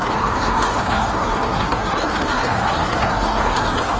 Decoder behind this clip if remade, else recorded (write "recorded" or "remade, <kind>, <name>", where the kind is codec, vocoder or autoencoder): remade, codec, SNAC